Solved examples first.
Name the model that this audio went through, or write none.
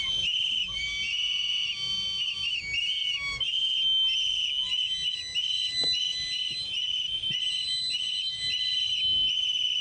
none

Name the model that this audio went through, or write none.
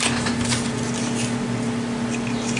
none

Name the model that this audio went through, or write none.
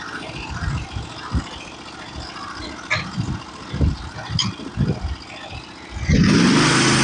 none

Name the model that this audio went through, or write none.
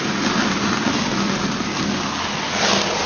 none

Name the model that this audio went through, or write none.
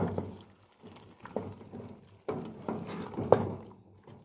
none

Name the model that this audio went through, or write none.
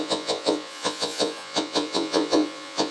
vocoder, Vocos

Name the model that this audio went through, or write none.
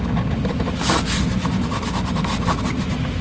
none